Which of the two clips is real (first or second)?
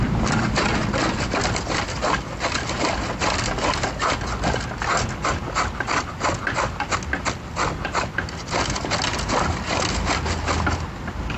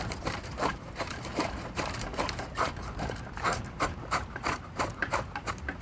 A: first